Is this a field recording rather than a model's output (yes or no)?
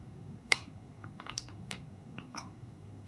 no